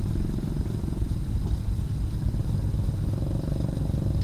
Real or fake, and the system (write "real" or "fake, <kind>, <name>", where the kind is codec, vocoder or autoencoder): real